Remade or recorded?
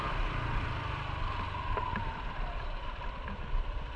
remade